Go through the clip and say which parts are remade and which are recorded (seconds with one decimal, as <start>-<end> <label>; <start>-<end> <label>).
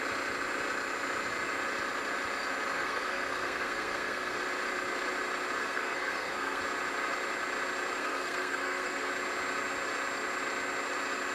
0.0-2.7 recorded; 2.7-4.4 remade; 4.4-5.6 recorded; 5.6-6.6 remade; 6.6-8.0 recorded; 8.0-9.1 remade; 9.1-11.3 recorded